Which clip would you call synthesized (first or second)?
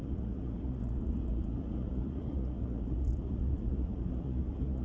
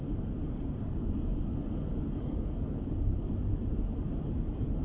first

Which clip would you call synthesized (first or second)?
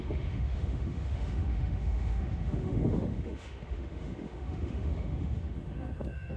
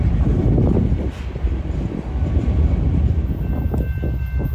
first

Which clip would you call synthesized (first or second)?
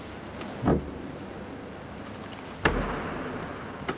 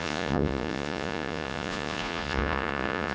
second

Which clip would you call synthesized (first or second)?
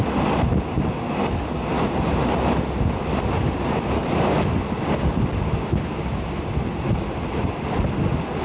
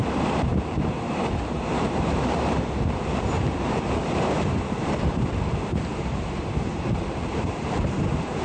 second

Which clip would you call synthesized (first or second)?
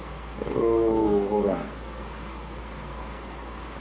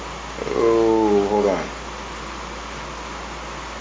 first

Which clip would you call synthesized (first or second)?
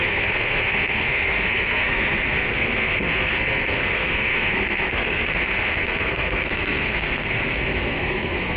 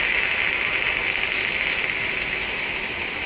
first